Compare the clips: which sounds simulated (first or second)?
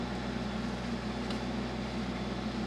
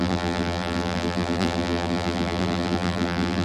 second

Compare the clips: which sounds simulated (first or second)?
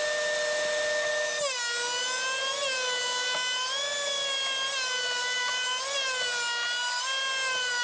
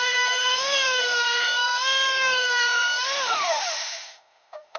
second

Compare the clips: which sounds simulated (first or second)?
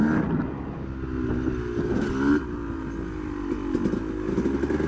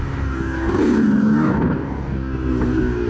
second